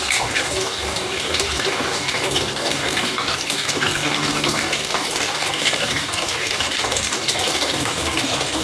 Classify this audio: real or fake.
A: fake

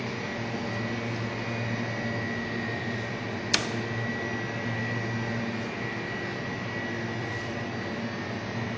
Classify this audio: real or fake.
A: real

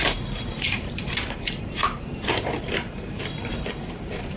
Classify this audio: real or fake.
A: fake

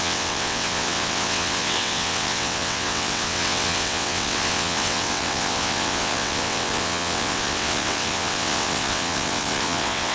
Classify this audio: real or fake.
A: fake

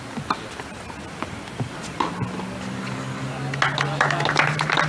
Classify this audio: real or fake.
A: real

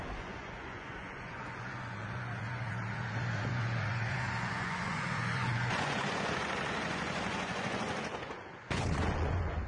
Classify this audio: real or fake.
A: fake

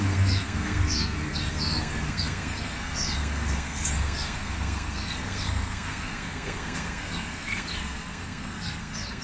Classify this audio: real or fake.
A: fake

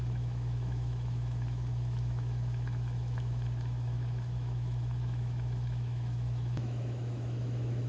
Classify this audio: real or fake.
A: fake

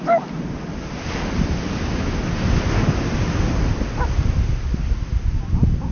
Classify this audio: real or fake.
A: real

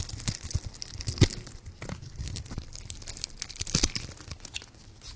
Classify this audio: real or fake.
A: real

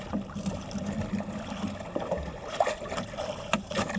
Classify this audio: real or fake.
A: real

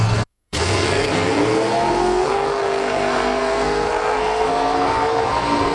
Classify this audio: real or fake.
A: fake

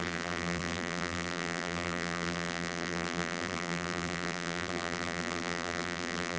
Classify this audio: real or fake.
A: fake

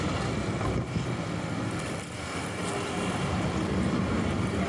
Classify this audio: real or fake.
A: real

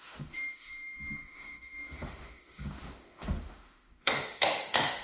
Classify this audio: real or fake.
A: fake